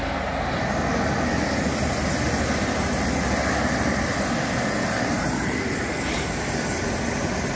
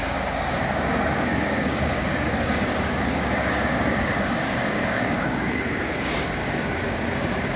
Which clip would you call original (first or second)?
first